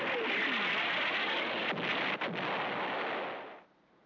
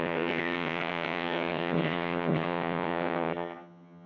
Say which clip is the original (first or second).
first